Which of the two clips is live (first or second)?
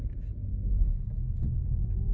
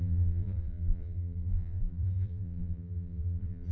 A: first